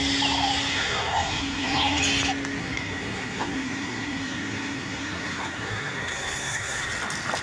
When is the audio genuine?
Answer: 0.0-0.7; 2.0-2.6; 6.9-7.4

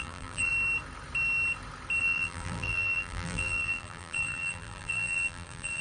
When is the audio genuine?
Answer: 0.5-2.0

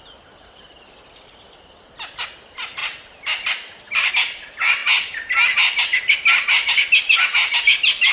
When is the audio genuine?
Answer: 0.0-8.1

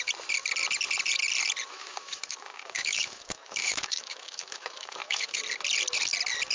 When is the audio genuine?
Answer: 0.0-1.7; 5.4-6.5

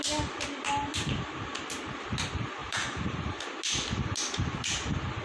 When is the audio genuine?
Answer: 0.0-0.9; 1.7-2.6; 3.4-5.2

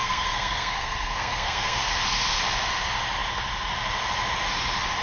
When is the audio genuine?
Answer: 1.8-5.0

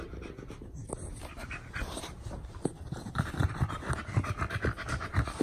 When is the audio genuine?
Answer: 0.0-0.8; 4.0-5.4

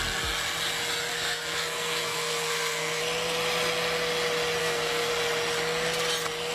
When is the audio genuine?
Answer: 0.0-1.1; 3.0-4.6; 5.1-6.5